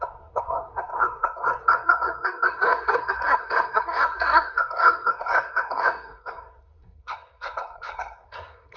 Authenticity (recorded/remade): remade